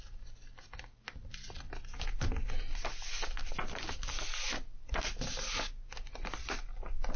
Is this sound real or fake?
real